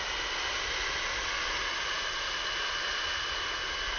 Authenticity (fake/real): real